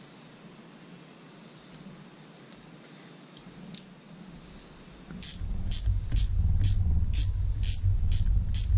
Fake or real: real